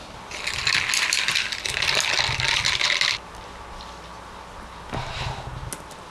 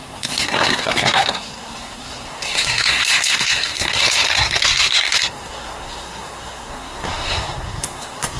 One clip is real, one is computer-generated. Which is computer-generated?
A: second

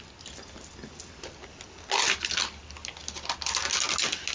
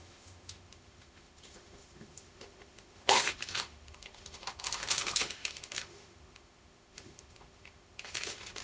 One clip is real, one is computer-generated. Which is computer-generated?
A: second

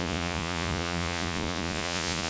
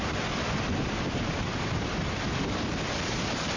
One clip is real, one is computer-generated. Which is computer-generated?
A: first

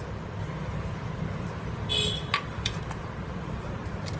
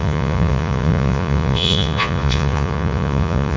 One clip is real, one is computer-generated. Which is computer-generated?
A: second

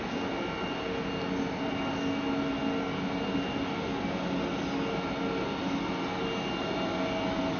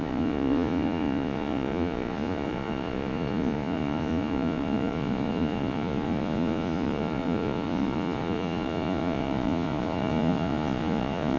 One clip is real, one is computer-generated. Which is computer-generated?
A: second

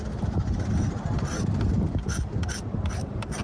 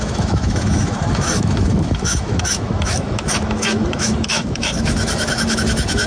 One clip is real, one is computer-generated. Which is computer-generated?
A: second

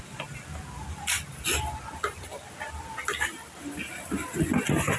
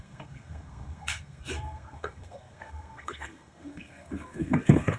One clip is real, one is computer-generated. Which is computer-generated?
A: second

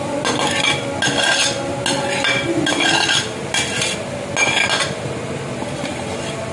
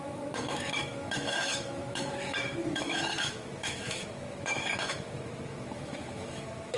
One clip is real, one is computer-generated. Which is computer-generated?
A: second